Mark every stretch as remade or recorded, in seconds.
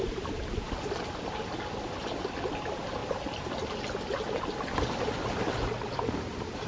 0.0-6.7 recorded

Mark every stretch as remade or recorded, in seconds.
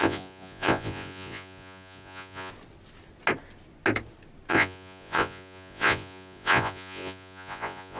0.0-2.5 remade; 2.5-4.5 recorded; 4.5-8.0 remade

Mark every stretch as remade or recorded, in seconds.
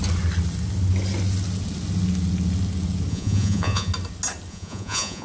0.0-3.1 recorded; 3.1-3.9 remade; 3.9-4.5 recorded; 4.5-5.2 remade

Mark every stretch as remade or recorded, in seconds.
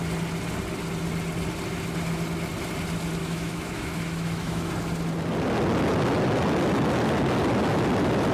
0.0-3.2 recorded; 3.2-4.7 remade; 4.7-8.3 recorded